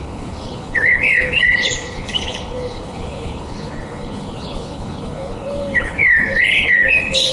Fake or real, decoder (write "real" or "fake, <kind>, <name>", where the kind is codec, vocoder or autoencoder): fake, codec, HILCodec